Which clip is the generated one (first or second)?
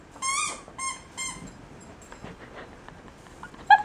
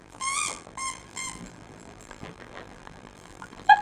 second